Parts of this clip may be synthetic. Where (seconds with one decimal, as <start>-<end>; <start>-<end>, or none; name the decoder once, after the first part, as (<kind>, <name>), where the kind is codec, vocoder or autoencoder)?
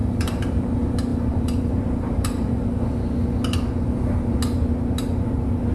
0.0-0.7 (vocoder, BigVGAN v2); 1.1-3.0